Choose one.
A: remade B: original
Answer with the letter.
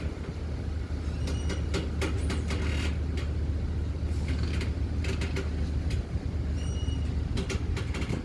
B